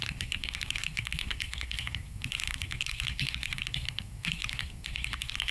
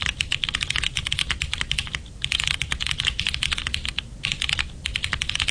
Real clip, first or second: second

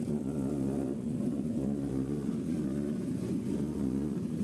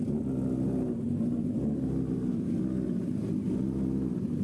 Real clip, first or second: second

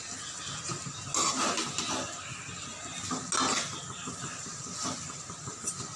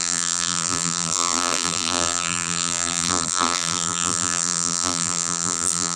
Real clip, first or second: first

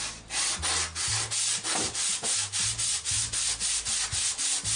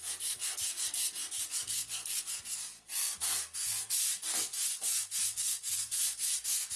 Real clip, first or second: first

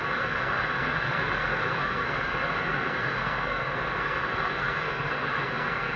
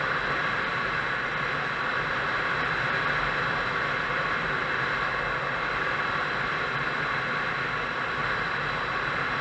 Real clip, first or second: second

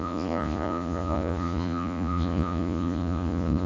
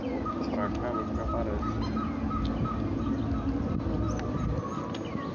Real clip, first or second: second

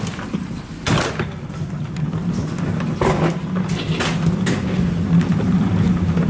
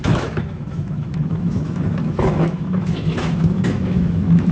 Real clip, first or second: first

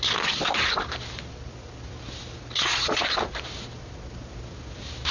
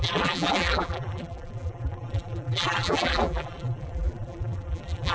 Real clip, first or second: first